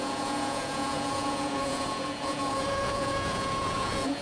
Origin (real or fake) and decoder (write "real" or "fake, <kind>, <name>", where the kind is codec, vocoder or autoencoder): fake, vocoder, Vocos